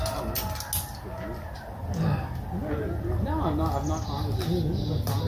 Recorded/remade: recorded